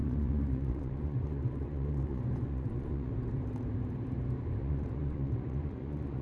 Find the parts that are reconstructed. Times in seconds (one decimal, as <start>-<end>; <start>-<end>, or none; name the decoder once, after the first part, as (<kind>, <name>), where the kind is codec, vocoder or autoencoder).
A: 0.0-3.1 (vocoder, Vocos); 4.6-6.2